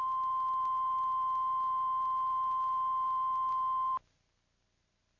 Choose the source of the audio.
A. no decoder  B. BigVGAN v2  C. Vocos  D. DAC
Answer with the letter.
A